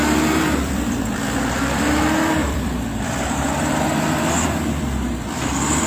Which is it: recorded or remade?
remade